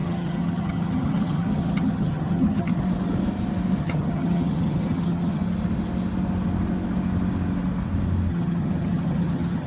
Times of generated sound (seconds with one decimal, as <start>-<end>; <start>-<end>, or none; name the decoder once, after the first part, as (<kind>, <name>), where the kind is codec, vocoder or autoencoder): 0.0-2.7 (vocoder, HiFi-GAN); 3.8-5.4; 8.3-9.7